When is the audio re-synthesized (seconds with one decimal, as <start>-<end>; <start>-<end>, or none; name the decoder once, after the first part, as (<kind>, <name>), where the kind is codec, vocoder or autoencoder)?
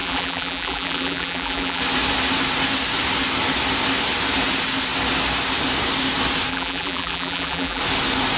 0.0-1.8 (vocoder, BigVGAN v2); 6.5-7.8